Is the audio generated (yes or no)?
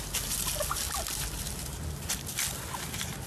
no